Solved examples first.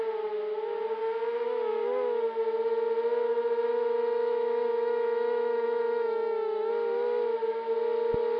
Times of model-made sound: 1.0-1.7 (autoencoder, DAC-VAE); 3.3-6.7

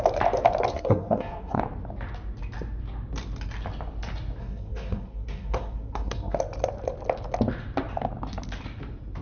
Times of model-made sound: 0.7-1.6 (codec, SNAC); 4.4-6.4

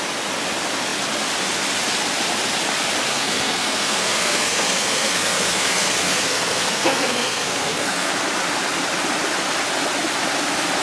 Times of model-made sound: 3.1-8.1 (codec, SNAC)

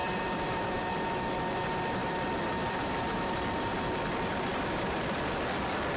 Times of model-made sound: 0.0-0.8 (vocoder, BigVGAN v2); 2.0-5.4

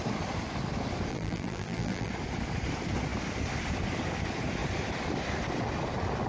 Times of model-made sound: 1.1-2.1 (vocoder, BigVGAN v2)

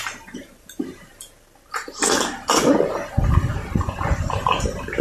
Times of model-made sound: 0.0-1.1 (vocoder, BigVGAN v2); 4.1-5.0